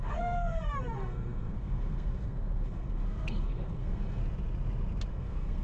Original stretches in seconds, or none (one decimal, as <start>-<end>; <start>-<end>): 4.2-5.1